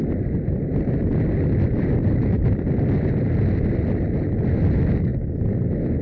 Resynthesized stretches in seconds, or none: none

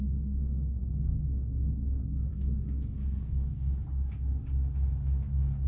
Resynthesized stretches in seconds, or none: 0.0-0.8 (codec, SNAC); 2.3-3.7

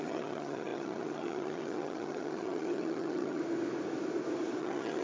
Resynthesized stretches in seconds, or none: 0.0-3.4 (vocoder, HiFi-GAN); 4.6-5.0

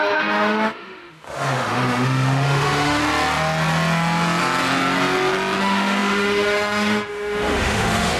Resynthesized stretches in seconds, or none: 0.0-3.0 (autoencoder, DAC-VAE); 5.6-8.2

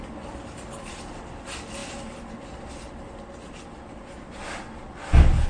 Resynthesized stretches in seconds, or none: none